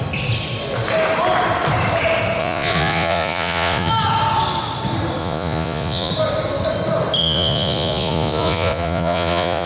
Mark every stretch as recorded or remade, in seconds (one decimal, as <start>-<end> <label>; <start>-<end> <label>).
0.0-2.4 recorded; 2.4-3.9 remade; 3.9-5.2 recorded; 5.2-6.1 remade; 6.1-7.2 recorded; 7.2-9.7 remade